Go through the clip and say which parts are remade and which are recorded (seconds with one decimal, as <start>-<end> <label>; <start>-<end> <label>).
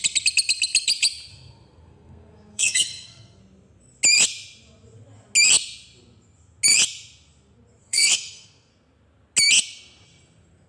0.0-1.3 recorded; 1.3-3.4 remade; 3.4-7.8 recorded; 7.8-8.7 remade; 8.7-10.7 recorded